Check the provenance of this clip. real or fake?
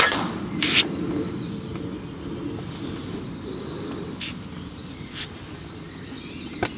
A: real